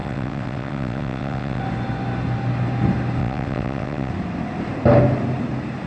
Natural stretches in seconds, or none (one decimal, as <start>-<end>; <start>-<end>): 1.6-3.2; 4.1-5.9